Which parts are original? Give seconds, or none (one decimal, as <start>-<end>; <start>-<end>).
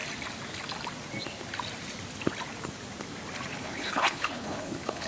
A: 0.0-3.5